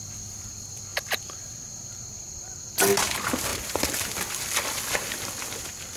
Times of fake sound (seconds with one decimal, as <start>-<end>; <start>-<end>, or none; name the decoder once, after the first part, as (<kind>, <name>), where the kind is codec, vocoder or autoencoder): none